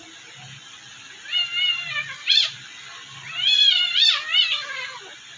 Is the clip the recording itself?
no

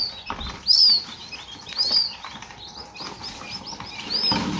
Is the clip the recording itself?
yes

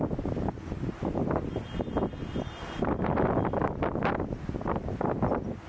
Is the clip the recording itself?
yes